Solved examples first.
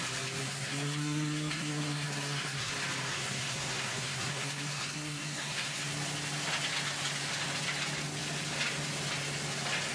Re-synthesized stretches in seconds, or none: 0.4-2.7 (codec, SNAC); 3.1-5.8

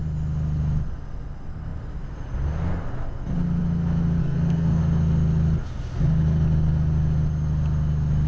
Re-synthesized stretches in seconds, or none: 4.2-4.8 (codec, SNAC)

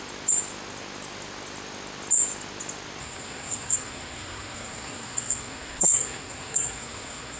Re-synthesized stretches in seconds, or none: 3.0-7.4 (codec, SNAC)